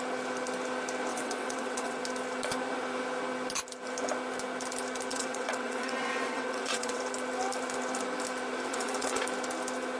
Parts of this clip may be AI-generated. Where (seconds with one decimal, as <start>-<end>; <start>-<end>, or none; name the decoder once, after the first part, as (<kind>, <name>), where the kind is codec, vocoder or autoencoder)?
1.1-2.0 (vocoder, WaveNeXt); 5.1-7.0; 8.7-9.2